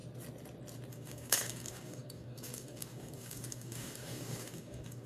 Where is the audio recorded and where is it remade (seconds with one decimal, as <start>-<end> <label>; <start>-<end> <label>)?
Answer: 0.0-0.9 recorded; 0.9-5.1 remade